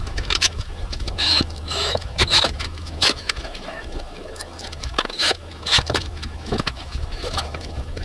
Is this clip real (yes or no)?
no